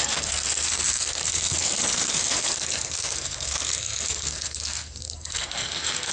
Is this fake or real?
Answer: fake